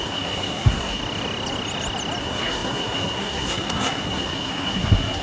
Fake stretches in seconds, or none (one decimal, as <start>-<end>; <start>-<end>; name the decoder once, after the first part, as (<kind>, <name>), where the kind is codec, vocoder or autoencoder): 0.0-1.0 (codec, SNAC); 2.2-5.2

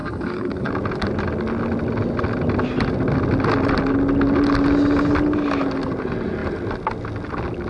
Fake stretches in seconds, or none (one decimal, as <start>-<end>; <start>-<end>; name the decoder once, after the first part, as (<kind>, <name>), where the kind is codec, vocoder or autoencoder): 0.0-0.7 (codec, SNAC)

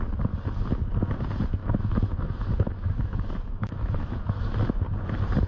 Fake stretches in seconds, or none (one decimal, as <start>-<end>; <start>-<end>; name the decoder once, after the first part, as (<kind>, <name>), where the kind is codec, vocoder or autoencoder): 1.6-4.4 (autoencoder, DAC-VAE)

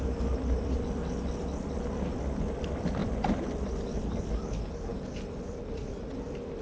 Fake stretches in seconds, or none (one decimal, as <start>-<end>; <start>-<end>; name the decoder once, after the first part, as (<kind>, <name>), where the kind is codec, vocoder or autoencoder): none